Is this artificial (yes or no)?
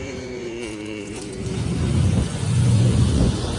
yes